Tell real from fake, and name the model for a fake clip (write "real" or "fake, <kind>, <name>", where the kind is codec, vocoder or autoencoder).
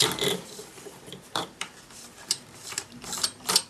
fake, vocoder, BigVGAN v2